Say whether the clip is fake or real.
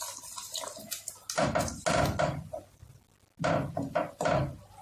real